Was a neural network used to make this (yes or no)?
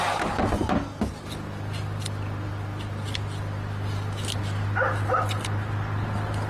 no